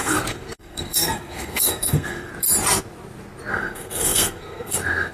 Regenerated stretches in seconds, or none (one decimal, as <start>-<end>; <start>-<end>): 0.0-2.3; 3.5-5.1